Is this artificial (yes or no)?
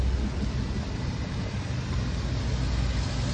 no